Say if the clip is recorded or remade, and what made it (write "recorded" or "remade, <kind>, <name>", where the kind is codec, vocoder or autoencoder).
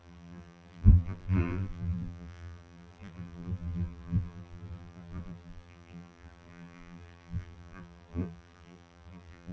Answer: remade, vocoder, BigVGAN v2